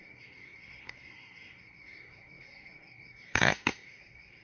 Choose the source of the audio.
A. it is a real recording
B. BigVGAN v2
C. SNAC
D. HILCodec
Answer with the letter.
C